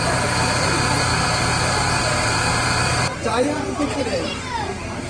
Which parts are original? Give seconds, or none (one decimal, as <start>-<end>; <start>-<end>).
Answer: none